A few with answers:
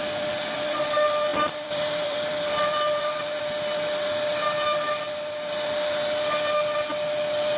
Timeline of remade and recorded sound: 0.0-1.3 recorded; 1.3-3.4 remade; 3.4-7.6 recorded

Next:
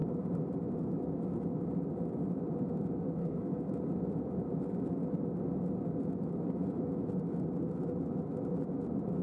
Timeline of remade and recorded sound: 0.0-3.2 recorded; 3.2-3.7 remade; 3.7-9.2 recorded

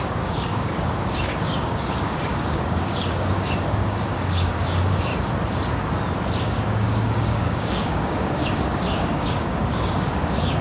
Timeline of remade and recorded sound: 0.0-5.1 remade; 5.1-6.4 recorded; 6.4-10.6 remade